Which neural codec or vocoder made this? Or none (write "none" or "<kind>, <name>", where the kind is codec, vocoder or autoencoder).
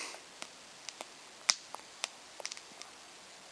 vocoder, BigVGAN v2